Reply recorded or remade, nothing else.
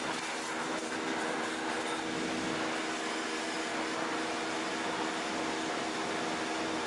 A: recorded